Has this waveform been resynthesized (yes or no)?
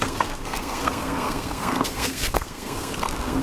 yes